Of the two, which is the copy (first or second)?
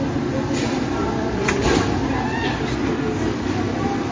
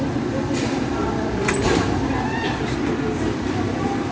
second